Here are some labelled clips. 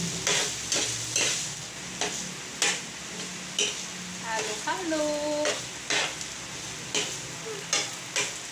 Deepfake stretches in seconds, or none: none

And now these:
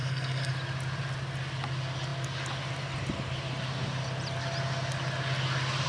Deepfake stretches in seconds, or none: 0.0-0.5 (codec, SNAC)

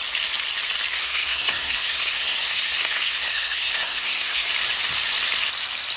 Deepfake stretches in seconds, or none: 0.9-4.5 (codec, SNAC)

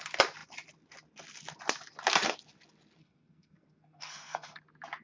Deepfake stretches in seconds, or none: 3.0-4.6 (codec, SNAC)

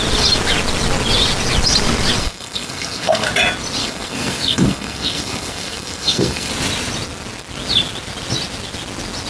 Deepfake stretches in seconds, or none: 2.2-3.3 (codec, SNAC); 3.8-6.5

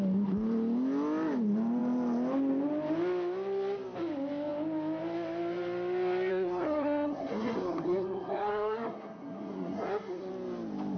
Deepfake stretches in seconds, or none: 6.3-10.3 (codec, SNAC)